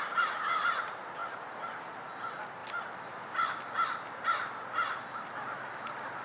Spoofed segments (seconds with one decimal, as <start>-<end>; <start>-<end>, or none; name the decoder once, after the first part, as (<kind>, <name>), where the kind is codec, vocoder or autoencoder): none

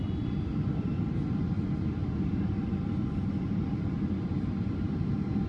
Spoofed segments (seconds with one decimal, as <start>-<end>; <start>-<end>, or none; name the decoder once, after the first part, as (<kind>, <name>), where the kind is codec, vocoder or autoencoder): 0.5-1.3 (vocoder, BigVGAN v2); 2.0-4.9

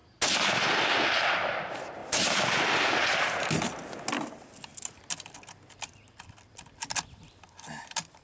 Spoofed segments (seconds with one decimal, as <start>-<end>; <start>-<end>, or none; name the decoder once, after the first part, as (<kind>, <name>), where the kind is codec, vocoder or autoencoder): none

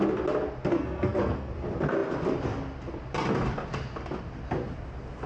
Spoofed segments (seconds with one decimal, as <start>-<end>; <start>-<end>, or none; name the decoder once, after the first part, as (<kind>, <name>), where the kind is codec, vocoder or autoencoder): 0.7-1.5 (codec, SNAC)